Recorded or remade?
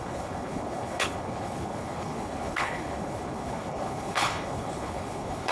remade